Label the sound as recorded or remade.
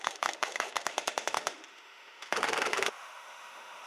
remade